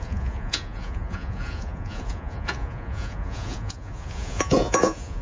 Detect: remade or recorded remade